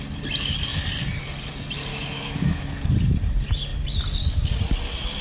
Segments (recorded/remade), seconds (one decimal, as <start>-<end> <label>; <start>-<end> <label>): 0.0-1.9 recorded; 1.9-2.6 remade; 2.6-5.2 recorded